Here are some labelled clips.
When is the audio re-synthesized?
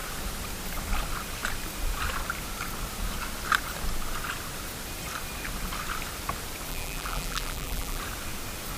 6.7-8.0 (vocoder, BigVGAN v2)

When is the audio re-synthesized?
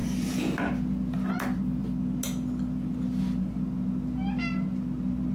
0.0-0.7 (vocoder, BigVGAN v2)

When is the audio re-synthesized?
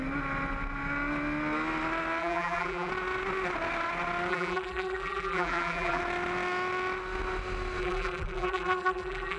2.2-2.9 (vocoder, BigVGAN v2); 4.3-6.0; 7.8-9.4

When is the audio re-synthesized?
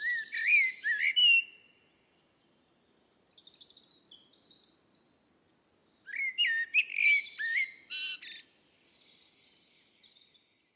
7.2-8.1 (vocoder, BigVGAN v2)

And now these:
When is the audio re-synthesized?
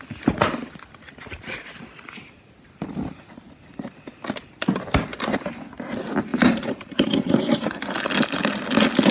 5.1-5.6 (vocoder, BigVGAN v2); 6.3-7.6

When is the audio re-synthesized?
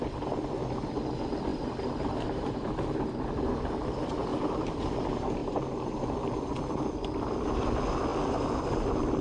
1.5-3.9 (vocoder, BigVGAN v2); 4.3-4.8; 5.4-6.0